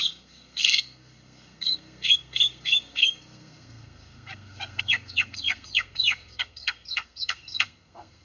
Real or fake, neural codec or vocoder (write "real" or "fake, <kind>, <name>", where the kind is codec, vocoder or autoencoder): fake, codec, SNAC